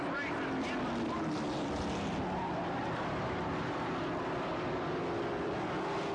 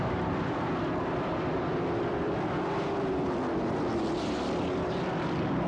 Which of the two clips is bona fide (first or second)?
first